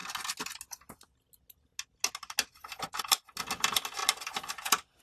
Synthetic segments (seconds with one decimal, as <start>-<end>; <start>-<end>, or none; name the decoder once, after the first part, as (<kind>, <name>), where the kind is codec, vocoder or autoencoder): none